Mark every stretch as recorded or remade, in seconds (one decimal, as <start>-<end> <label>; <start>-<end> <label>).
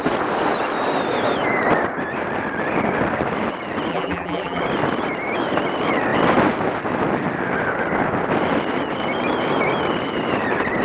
0.0-3.9 recorded; 3.9-4.6 remade; 4.6-10.8 recorded